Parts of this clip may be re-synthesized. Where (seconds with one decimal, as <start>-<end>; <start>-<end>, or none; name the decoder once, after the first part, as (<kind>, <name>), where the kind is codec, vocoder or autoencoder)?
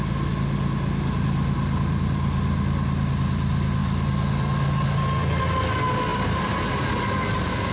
6.1-6.9 (vocoder, BigVGAN v2)